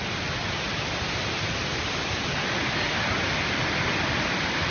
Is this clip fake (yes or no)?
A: no